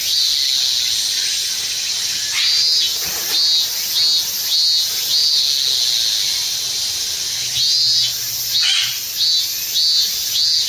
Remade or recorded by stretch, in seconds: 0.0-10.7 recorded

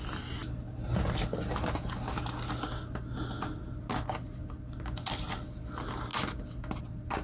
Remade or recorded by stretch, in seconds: 0.0-7.2 recorded

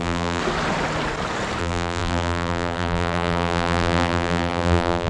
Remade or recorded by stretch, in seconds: 0.0-0.4 remade; 0.4-1.6 recorded; 1.6-5.1 remade